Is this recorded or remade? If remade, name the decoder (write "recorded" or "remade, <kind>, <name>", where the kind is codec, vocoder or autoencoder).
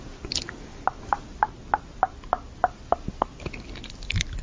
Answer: recorded